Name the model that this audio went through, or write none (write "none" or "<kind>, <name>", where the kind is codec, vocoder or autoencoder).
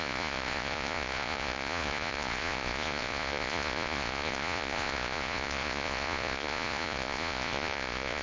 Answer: vocoder, Vocos